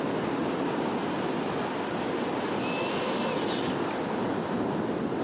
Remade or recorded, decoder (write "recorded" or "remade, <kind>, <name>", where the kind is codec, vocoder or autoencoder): recorded